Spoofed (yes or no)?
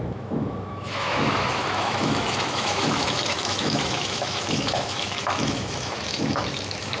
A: yes